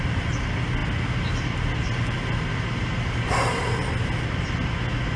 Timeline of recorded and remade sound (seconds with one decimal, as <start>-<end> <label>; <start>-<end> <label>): 0.0-5.2 recorded